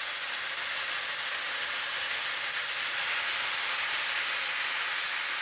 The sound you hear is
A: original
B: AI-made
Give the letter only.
A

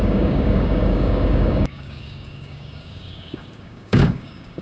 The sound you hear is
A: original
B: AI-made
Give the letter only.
B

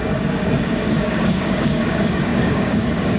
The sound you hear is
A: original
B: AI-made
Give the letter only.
B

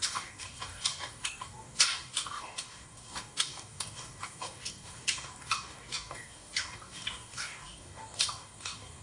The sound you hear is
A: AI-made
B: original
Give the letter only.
A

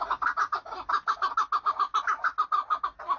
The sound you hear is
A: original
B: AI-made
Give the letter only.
A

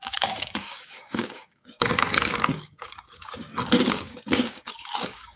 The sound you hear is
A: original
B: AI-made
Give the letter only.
B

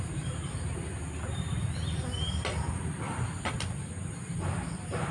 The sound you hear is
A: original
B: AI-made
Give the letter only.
A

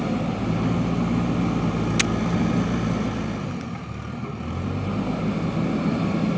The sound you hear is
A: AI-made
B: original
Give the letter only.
B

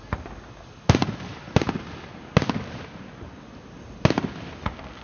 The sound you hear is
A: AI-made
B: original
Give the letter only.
B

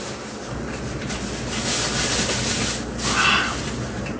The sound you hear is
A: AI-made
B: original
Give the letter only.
B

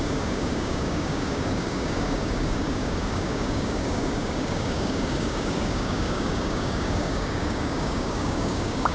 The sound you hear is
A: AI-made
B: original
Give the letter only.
A